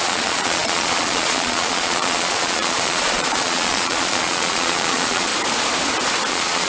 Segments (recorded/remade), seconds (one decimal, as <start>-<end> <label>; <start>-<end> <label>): 0.0-5.3 remade; 5.3-6.3 recorded; 6.3-6.7 remade